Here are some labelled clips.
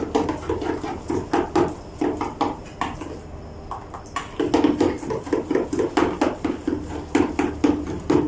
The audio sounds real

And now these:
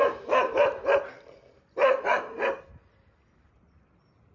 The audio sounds real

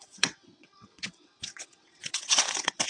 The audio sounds fake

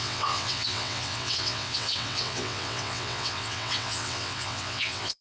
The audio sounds fake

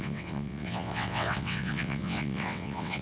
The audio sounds fake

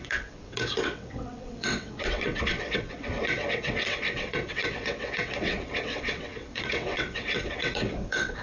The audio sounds fake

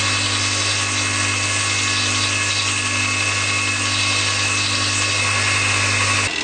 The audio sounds real